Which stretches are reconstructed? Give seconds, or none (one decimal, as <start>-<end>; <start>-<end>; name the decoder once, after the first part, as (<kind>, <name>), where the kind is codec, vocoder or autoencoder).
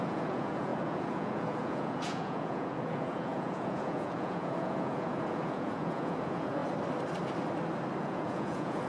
0.0-6.6 (vocoder, Vocos); 8.0-8.9